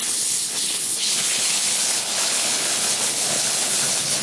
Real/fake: fake